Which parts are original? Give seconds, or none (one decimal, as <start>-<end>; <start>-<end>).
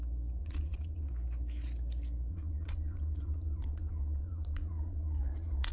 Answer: 0.0-0.4; 1.1-2.3